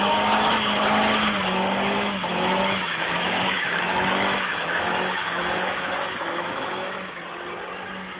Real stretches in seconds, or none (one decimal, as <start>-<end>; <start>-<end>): 0.0-2.3; 7.2-8.2